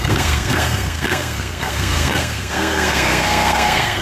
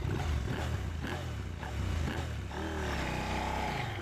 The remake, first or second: first